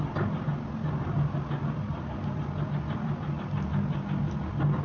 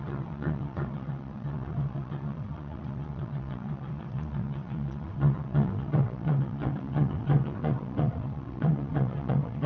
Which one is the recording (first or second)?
first